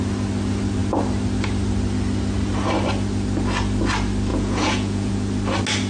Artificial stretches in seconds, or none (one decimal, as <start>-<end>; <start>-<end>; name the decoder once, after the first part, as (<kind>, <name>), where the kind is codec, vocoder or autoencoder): 4.3-5.1 (vocoder, Vocos)